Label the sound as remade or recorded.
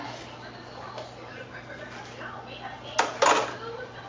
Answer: recorded